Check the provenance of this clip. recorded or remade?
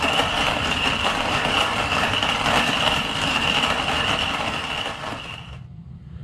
remade